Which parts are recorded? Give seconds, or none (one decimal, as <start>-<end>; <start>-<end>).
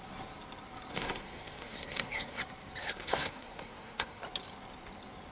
0.0-0.9; 2.4-2.8; 4.2-5.3